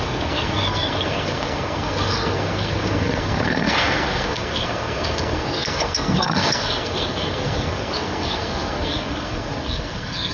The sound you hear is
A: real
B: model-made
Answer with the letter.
B